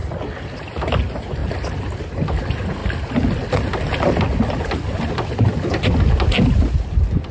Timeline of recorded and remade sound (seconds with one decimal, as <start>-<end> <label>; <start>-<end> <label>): 0.0-7.3 recorded